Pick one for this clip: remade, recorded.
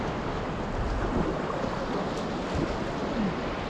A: recorded